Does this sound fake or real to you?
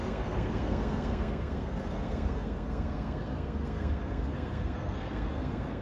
fake